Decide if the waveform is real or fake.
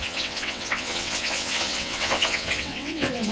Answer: fake